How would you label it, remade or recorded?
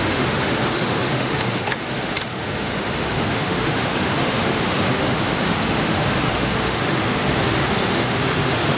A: remade